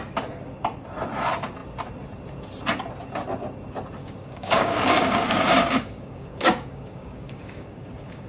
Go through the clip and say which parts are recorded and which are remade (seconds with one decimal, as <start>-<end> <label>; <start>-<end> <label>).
0.0-4.0 recorded; 4.0-8.3 remade